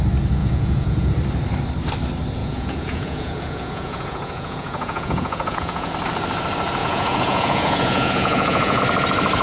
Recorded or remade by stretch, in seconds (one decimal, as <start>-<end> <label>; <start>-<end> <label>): 0.0-0.4 recorded; 0.4-1.1 remade; 1.1-2.4 recorded; 2.4-5.9 remade; 5.9-6.8 recorded; 6.8-8.8 remade; 8.8-9.4 recorded